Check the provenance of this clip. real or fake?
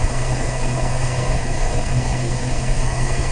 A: fake